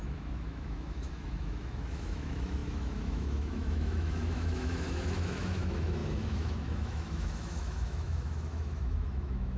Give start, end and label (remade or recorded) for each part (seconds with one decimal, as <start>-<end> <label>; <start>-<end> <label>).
0.0-9.6 remade